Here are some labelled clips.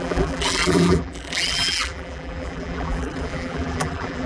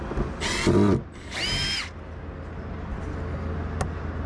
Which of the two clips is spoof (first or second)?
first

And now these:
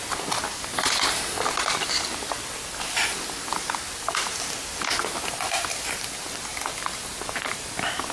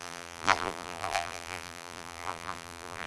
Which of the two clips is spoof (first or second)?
second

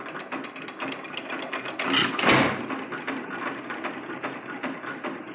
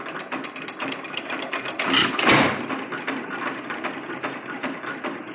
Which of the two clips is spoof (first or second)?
second